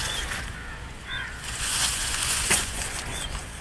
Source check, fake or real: fake